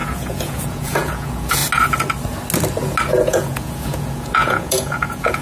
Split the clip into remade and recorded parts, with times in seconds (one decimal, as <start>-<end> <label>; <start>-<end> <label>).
0.0-1.6 remade; 1.6-3.1 recorded; 3.1-5.4 remade